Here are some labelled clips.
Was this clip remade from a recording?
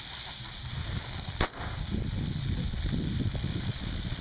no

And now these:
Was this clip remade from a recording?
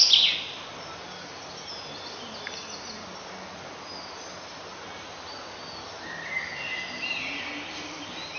no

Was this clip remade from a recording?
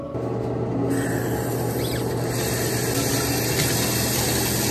no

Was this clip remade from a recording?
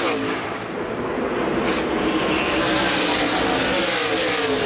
no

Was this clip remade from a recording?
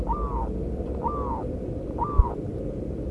no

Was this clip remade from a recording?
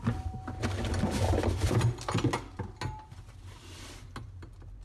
no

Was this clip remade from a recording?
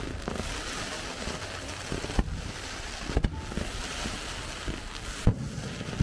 no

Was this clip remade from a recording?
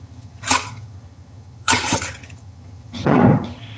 yes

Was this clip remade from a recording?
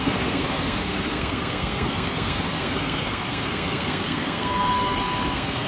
yes